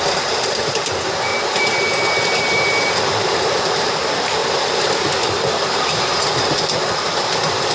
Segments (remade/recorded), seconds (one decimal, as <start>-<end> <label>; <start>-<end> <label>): 0.0-1.3 remade; 1.3-2.4 recorded; 2.4-4.4 remade; 4.4-6.9 recorded; 6.9-7.7 remade